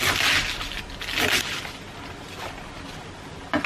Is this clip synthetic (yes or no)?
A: no